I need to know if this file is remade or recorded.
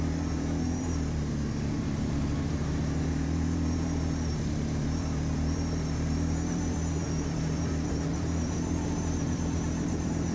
remade